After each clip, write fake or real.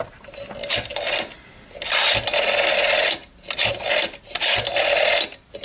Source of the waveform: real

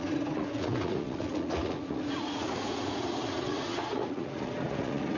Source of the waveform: fake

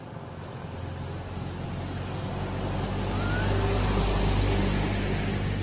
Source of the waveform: real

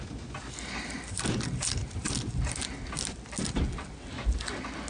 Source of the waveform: real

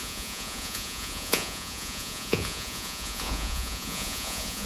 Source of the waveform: fake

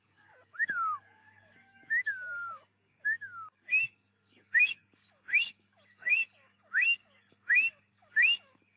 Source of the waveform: fake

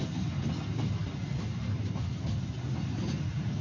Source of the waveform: real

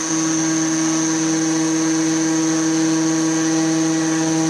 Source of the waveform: real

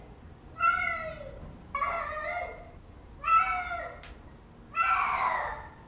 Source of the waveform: real